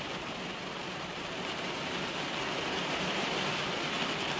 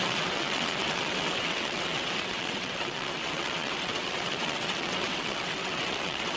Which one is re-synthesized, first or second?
second